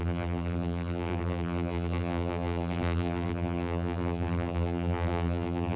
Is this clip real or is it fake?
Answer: fake